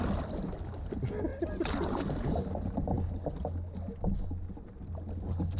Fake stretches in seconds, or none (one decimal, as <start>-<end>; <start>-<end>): none